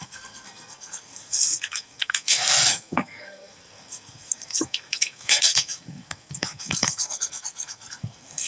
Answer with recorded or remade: remade